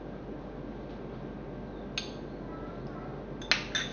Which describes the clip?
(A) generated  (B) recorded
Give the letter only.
B